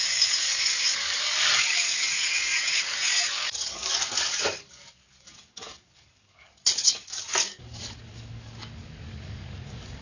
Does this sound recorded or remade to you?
remade